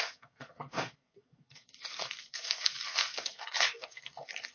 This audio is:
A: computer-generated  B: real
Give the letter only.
A